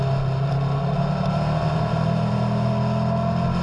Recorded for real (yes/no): yes